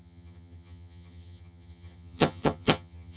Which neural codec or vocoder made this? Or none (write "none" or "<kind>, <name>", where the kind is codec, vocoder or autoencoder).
vocoder, HiFi-GAN